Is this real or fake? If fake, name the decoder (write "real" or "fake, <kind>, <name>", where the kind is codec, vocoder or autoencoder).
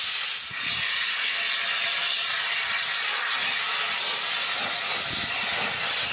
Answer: real